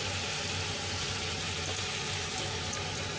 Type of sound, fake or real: real